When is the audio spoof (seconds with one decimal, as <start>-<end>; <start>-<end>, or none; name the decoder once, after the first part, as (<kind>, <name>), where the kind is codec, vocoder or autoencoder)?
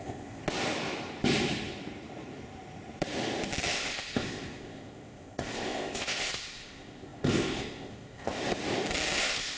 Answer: 0.0-0.4 (codec, ZipCodec); 3.7-8.4; 9.2-9.6